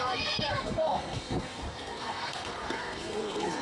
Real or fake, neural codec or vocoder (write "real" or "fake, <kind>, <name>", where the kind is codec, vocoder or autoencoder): fake, codec, SNAC